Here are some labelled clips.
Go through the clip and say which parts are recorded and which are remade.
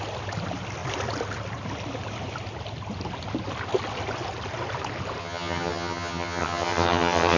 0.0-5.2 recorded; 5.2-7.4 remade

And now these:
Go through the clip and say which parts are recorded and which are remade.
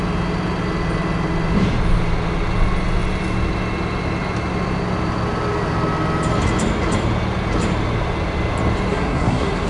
0.0-8.9 recorded; 8.9-9.7 remade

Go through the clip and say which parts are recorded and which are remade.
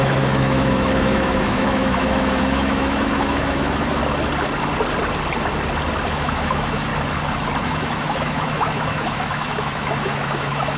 0.0-4.0 remade; 4.0-6.1 recorded; 6.1-6.9 remade; 6.9-7.6 recorded; 7.6-10.8 remade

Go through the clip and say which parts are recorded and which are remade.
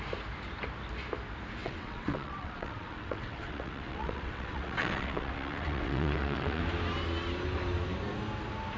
0.0-1.6 recorded; 1.6-6.6 remade; 6.6-8.8 recorded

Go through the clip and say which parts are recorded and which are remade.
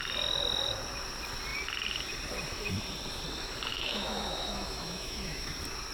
0.0-3.7 recorded; 3.7-5.5 remade; 5.5-5.9 recorded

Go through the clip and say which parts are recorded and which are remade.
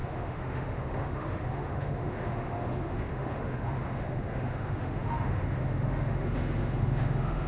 0.0-7.5 remade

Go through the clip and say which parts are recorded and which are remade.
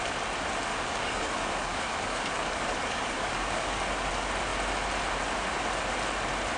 0.0-0.7 recorded; 0.7-4.1 remade; 4.1-6.6 recorded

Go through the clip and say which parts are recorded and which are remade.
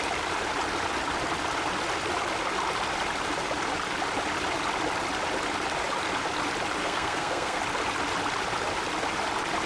0.0-6.8 recorded; 6.8-7.6 remade; 7.6-9.7 recorded